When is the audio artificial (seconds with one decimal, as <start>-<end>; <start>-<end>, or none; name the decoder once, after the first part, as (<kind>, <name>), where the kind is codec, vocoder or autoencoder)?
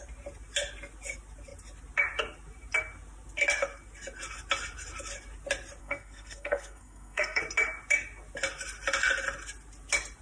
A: 5.8-7.4 (codec, SNAC)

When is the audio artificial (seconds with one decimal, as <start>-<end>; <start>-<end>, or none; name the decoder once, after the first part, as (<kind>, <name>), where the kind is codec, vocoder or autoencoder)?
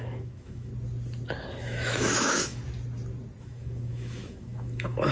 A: 0.0-0.7 (autoencoder, DAC-VAE); 1.6-2.6; 3.4-5.1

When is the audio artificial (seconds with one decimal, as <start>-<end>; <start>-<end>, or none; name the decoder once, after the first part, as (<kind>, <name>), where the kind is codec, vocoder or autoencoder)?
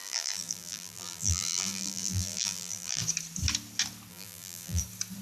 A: 0.0-3.0 (vocoder, BigVGAN v2); 4.1-4.8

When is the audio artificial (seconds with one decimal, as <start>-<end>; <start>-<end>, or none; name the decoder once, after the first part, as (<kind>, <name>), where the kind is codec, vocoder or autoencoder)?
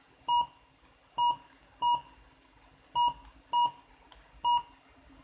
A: none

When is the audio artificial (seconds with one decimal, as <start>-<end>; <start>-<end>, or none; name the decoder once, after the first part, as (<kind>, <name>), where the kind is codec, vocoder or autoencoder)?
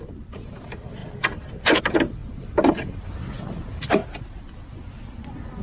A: 0.0-1.0 (vocoder, BigVGAN v2); 1.8-5.6